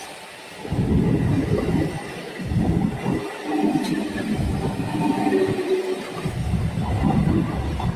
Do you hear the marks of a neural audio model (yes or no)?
no